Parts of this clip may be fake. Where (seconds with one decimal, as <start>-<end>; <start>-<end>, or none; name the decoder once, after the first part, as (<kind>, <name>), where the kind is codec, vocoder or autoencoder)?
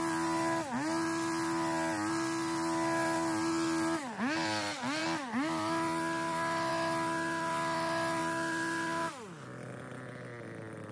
none